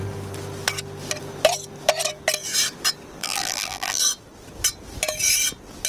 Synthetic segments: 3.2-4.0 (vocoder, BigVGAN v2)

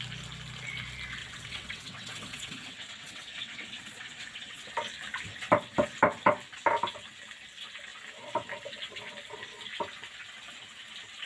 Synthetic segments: 1.2-4.7 (vocoder, WaveNeXt)